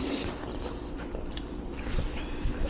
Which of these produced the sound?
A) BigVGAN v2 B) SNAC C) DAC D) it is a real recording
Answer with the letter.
A